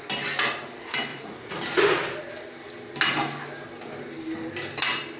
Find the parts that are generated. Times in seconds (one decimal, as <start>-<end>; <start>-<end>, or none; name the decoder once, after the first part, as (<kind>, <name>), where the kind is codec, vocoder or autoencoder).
1.1-1.6 (vocoder, Vocos)